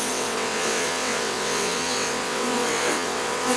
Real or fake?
fake